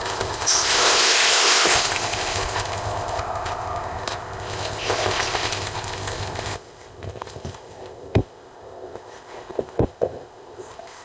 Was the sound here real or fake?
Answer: fake